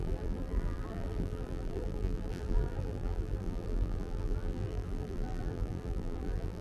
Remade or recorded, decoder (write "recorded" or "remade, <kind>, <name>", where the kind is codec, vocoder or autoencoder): remade, vocoder, BigVGAN v2